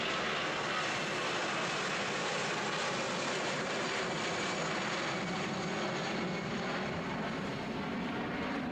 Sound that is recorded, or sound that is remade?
recorded